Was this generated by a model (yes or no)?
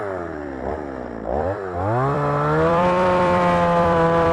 yes